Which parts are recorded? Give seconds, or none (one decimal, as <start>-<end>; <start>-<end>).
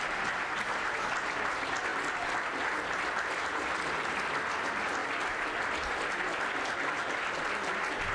0.0-8.1